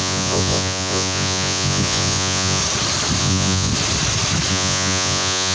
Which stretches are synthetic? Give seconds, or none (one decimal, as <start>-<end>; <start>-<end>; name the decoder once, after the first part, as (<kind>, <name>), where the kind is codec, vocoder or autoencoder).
0.0-2.6 (vocoder, Vocos); 3.2-3.7; 4.5-5.5